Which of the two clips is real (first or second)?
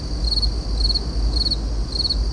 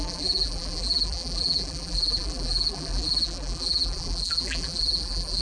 first